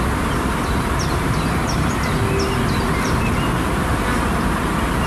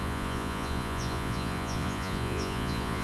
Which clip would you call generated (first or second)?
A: second